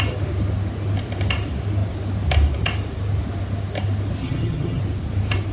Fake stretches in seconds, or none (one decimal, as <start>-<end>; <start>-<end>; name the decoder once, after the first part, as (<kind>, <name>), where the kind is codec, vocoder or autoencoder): 4.2-4.8 (vocoder, HiFi-GAN)